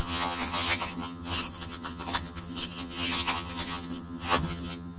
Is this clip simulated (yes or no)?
yes